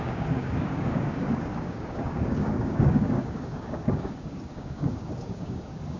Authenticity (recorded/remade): remade